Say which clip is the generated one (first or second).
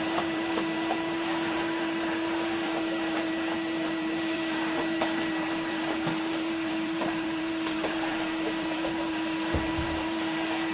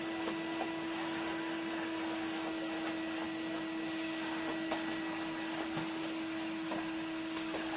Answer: first